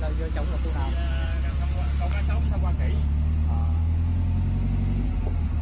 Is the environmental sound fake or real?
real